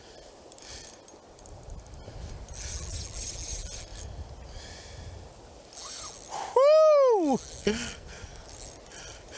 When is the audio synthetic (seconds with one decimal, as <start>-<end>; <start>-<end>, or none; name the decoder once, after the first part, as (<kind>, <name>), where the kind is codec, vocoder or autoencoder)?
7.6-8.5 (codec, SNAC)